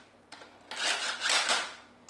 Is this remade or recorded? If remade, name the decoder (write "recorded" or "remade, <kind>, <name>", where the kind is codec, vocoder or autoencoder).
recorded